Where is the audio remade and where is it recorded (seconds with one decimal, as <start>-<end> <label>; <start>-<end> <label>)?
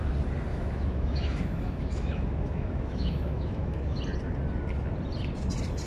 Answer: 0.0-0.5 recorded; 0.5-4.0 remade; 4.0-5.9 recorded